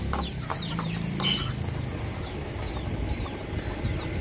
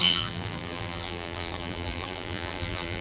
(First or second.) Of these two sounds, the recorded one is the first